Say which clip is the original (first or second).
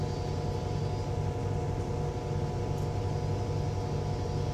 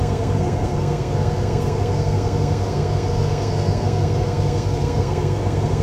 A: first